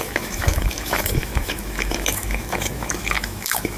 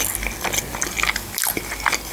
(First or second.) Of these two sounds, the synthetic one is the first